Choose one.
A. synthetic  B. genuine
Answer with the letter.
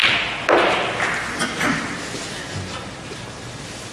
B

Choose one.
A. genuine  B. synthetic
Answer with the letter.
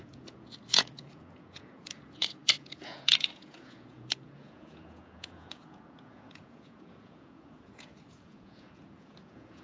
B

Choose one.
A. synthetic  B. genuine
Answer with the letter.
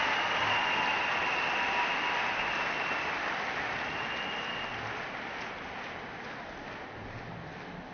B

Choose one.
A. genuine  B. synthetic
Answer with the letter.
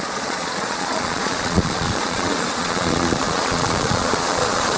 B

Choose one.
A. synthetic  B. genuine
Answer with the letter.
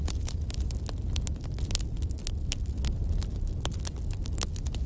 B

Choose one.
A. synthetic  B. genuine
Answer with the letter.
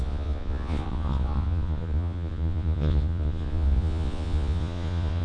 A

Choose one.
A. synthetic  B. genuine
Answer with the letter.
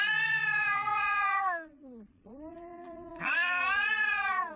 A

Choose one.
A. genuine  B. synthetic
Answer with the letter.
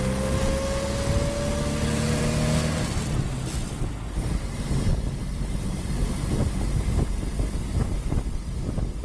A